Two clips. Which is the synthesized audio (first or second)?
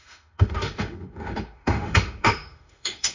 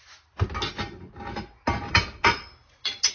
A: first